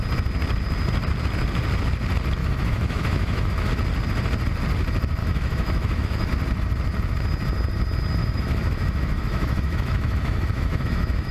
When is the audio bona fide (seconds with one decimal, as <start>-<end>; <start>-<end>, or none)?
0.0-2.4; 3.7-5.2; 6.3-8.2